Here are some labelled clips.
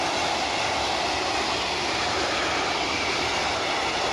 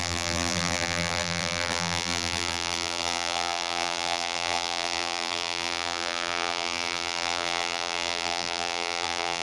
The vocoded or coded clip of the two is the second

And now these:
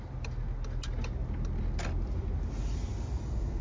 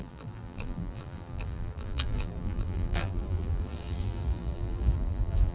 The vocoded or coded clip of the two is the second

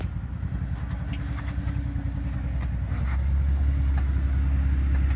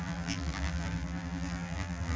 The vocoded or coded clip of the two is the second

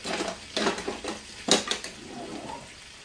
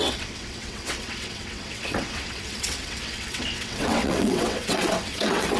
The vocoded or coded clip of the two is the second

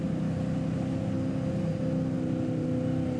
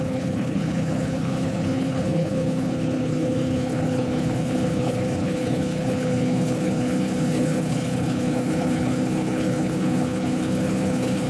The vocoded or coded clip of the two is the second